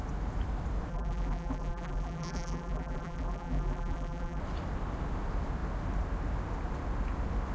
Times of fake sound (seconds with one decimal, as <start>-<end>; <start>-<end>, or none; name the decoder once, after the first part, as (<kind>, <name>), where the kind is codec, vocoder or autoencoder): 0.9-4.4 (vocoder, BigVGAN v2)